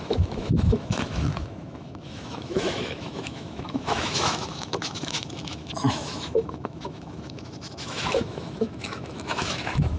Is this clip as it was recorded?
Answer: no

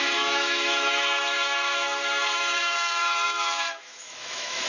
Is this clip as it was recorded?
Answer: no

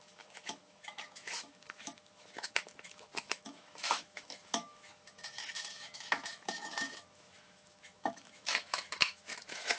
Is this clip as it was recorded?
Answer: no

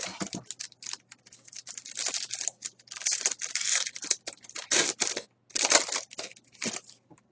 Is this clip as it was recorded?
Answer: yes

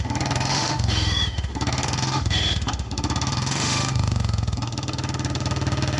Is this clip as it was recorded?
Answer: no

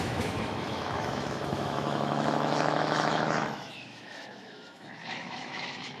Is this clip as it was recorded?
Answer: no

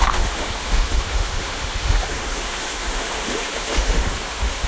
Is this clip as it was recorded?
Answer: no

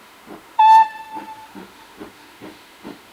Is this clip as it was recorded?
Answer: no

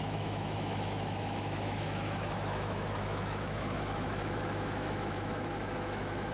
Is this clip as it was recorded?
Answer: no